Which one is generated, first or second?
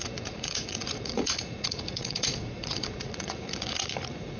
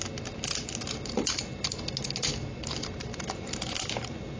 first